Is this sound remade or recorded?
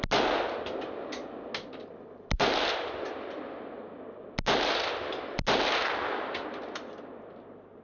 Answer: recorded